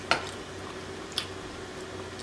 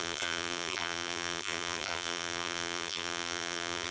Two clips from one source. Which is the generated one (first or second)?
second